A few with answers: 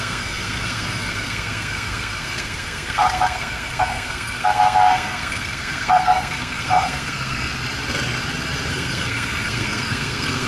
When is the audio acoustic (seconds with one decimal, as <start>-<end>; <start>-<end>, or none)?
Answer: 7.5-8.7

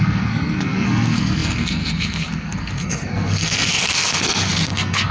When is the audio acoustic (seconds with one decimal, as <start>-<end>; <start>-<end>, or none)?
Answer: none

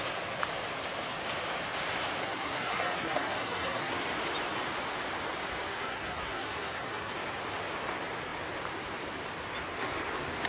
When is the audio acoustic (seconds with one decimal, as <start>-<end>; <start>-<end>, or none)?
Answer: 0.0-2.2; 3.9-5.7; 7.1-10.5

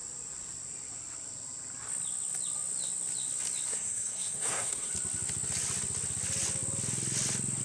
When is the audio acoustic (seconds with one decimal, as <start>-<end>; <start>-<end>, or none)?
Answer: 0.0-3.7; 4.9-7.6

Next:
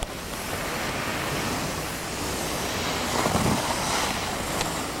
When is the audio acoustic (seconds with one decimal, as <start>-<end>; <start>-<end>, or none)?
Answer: 0.0-5.0

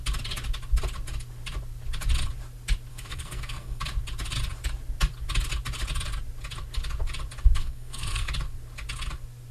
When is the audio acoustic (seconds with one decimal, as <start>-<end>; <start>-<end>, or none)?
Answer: 0.0-2.9; 3.8-7.6; 8.3-9.5